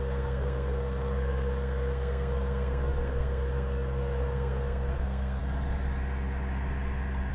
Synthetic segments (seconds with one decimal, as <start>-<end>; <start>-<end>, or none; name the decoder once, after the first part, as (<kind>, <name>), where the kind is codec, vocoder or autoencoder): 0.0-5.4 (codec, SNAC)